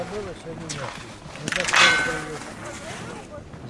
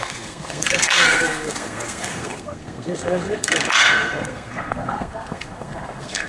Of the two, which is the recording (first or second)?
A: first